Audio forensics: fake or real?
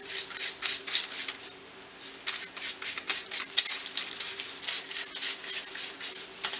real